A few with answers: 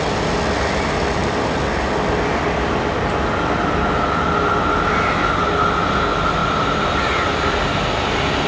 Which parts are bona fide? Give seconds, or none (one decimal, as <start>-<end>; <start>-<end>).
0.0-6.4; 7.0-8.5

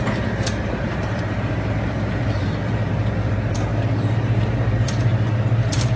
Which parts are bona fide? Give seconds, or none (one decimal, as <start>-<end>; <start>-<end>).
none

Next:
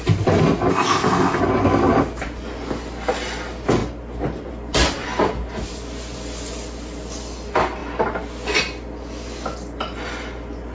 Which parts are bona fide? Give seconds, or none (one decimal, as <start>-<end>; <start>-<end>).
0.0-0.7; 1.4-10.7

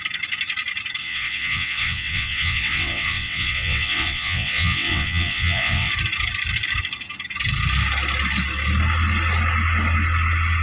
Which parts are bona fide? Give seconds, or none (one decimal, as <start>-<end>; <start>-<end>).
0.0-1.0; 5.9-10.6